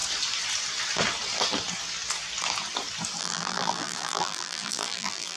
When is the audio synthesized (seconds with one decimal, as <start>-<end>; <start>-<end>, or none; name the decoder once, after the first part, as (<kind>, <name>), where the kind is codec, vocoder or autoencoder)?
3.2-5.4 (vocoder, BigVGAN v2)